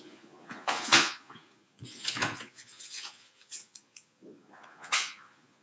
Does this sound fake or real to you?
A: fake